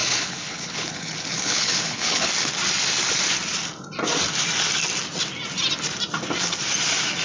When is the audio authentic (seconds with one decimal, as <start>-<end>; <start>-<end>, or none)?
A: 2.3-7.2